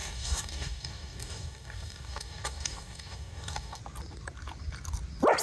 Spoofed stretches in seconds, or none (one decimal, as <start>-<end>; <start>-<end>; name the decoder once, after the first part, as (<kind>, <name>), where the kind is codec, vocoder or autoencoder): 0.0-3.8 (codec, DAC)